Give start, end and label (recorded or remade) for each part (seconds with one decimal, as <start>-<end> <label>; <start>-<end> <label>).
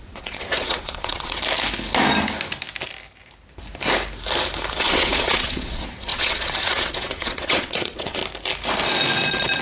0.0-1.4 remade; 1.4-4.7 recorded; 4.7-8.2 remade; 8.2-9.6 recorded